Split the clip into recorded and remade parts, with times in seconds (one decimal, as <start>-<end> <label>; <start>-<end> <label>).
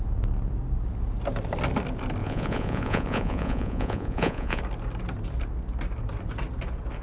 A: 0.0-2.2 recorded; 2.2-4.6 remade; 4.6-7.0 recorded